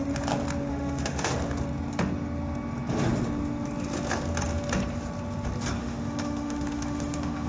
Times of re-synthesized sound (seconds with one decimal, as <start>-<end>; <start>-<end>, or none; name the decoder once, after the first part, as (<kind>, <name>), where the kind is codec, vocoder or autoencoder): 0.7-1.3 (autoencoder, DAC-VAE); 5.8-7.5